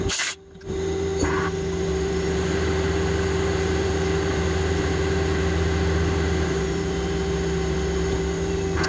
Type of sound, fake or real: real